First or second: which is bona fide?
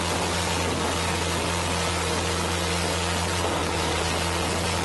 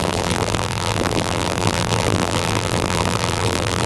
first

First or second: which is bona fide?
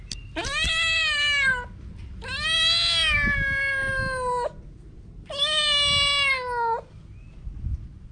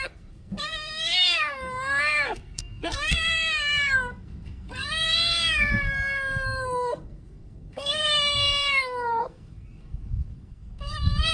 first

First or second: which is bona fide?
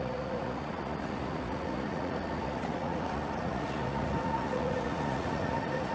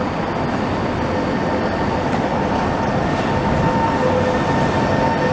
second